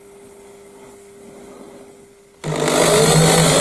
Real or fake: real